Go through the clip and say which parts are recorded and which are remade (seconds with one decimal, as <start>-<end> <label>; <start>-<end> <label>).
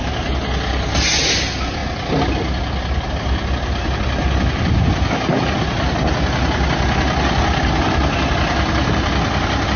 0.0-9.8 recorded